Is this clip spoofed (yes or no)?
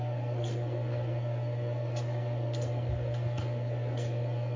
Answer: yes